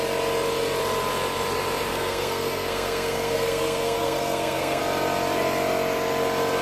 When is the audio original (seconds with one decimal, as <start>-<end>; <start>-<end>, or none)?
0.0-1.9; 4.8-6.6